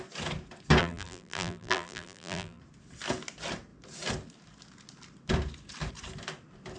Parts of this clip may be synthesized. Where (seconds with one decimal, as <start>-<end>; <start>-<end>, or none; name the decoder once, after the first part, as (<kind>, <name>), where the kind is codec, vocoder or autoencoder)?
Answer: 0.8-2.6 (vocoder, BigVGAN v2)